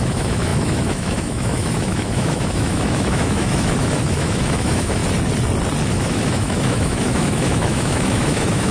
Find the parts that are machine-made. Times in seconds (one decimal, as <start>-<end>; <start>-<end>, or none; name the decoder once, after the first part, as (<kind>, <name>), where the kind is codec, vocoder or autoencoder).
0.0-5.0 (autoencoder, DAC-VAE); 5.9-8.7